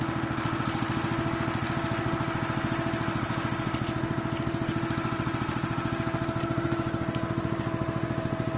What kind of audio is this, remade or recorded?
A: recorded